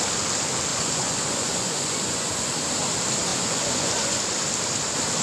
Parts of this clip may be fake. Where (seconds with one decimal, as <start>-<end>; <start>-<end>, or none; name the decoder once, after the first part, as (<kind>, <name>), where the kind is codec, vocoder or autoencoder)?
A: 0.7-2.5 (vocoder, Vocos); 3.3-4.2